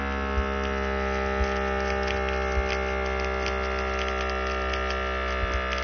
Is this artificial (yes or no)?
no